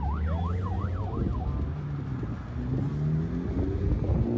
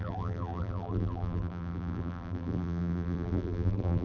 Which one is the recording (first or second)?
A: first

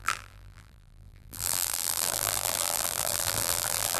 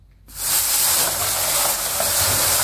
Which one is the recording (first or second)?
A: second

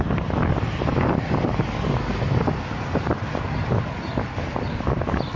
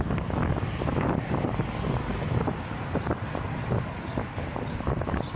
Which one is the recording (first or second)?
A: first